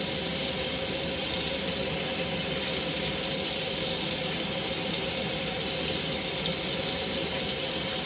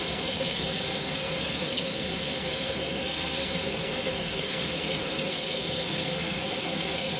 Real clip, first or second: first